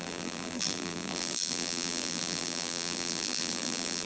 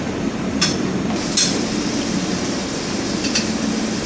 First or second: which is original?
second